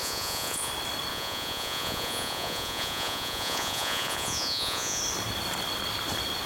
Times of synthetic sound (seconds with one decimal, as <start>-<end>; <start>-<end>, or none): 0.0-0.7; 1.1-5.0